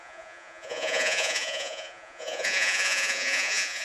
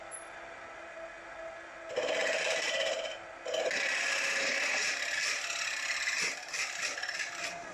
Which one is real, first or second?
second